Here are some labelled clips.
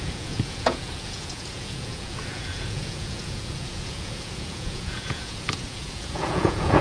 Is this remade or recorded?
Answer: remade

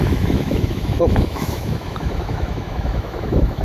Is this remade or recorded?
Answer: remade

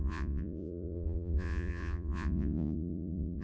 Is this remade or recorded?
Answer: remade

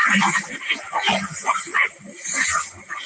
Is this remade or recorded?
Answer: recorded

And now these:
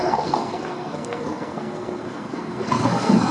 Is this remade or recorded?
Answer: remade